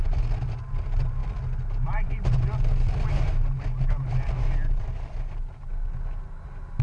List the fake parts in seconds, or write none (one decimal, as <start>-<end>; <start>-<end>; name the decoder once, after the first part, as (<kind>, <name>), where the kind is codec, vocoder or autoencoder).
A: none